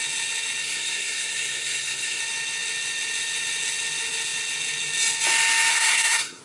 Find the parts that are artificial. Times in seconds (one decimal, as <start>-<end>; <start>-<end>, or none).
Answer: 0.6-2.2; 5.7-6.4